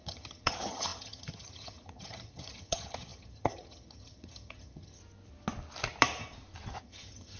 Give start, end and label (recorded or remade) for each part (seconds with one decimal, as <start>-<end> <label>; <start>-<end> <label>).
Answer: 0.0-5.0 remade; 5.0-6.8 recorded; 6.8-7.4 remade